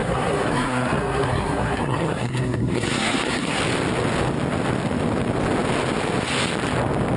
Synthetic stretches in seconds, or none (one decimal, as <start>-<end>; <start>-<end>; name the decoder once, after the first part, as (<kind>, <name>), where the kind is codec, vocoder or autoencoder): 0.0-3.6 (codec, SNAC)